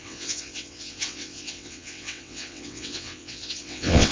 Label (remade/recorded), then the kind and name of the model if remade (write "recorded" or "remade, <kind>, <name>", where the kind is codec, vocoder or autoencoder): remade, vocoder, WaveNeXt